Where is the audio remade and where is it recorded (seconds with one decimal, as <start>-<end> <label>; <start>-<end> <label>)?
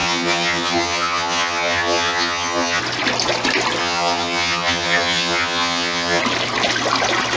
0.0-2.8 remade; 2.8-3.8 recorded; 3.8-6.2 remade; 6.2-7.4 recorded